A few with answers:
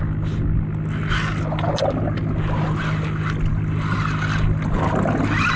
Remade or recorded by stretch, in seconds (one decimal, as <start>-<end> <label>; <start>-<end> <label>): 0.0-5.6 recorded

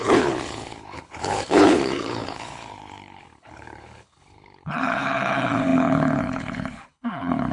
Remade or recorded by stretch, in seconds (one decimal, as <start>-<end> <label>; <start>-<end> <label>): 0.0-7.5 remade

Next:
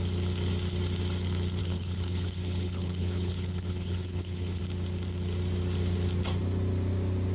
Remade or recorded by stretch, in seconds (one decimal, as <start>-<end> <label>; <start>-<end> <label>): 0.0-1.6 recorded; 1.6-4.6 remade; 4.6-7.3 recorded

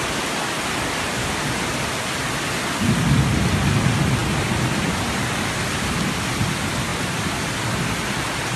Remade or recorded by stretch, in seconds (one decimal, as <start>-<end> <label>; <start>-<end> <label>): 0.0-8.6 recorded

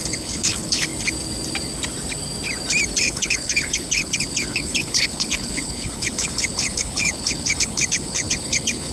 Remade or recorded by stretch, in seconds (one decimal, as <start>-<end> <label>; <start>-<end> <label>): 0.0-0.9 remade; 0.9-3.0 recorded; 3.0-8.9 remade

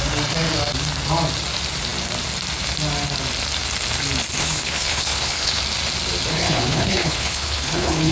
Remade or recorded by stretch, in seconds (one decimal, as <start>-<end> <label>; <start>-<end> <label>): 0.0-4.4 recorded; 4.4-5.6 remade; 5.6-6.3 recorded; 6.3-8.1 remade

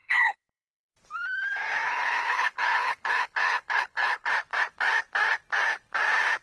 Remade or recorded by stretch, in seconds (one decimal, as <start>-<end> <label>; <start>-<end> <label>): 0.0-0.9 remade; 0.9-1.9 recorded; 1.9-4.3 remade; 4.3-6.4 recorded

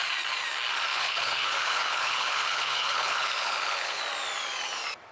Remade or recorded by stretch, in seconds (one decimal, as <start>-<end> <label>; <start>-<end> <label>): 0.0-0.9 recorded; 0.9-4.0 remade; 4.0-5.1 recorded